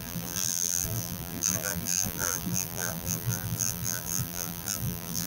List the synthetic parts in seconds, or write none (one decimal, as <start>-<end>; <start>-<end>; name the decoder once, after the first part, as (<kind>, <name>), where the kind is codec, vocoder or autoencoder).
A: 0.0-5.3 (vocoder, BigVGAN v2)